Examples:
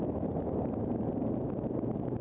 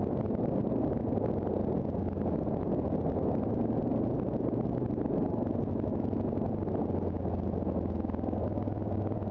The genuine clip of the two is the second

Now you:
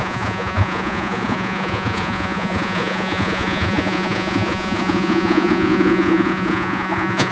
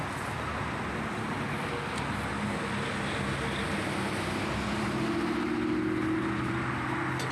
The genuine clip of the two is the second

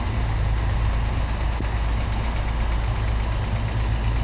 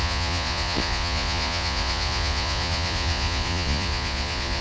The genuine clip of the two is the first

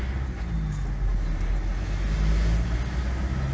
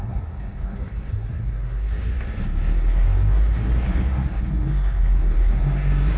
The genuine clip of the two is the first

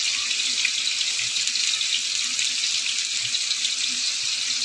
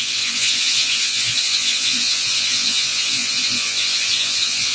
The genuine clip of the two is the first